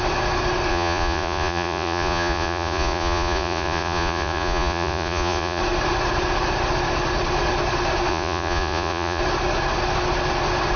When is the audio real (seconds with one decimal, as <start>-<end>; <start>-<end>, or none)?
0.0-0.7; 5.6-8.1; 9.2-10.8